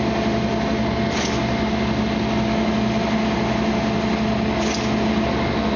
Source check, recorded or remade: recorded